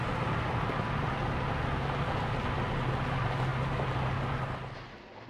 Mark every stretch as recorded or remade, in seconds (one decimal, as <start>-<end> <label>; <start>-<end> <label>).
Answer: 0.0-5.3 recorded